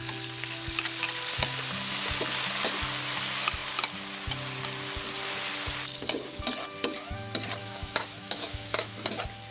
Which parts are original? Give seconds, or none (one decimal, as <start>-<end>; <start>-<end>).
0.0-7.6; 9.1-9.5